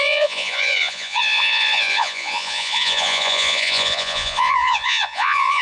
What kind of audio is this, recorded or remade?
remade